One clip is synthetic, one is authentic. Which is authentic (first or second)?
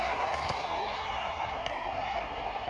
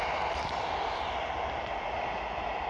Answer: second